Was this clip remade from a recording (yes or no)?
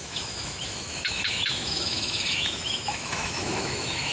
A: yes